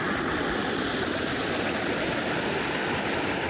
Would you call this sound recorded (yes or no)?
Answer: yes